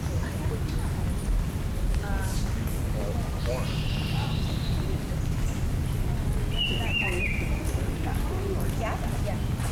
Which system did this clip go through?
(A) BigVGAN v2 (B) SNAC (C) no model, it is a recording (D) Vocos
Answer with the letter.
C